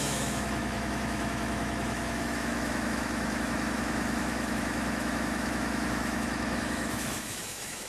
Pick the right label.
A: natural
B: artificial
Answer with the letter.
B